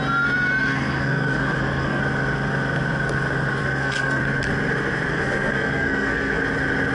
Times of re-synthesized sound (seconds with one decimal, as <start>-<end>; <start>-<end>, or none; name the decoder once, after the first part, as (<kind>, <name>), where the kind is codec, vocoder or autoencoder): 0.6-2.0 (codec, SNAC); 3.6-4.2; 5.1-6.4